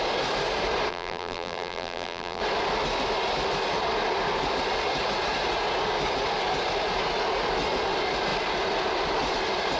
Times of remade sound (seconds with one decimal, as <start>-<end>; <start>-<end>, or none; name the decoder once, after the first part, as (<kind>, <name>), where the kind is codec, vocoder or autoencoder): 0.9-2.4 (vocoder, BigVGAN v2)